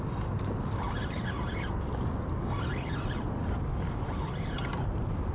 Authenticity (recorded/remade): recorded